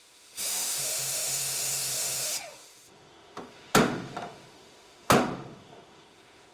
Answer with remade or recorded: remade